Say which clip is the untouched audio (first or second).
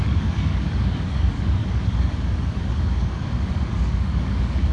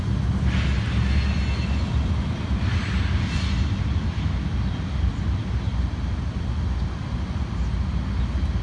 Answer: second